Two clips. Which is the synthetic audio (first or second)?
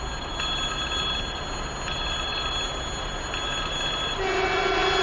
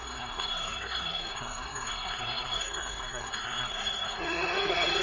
second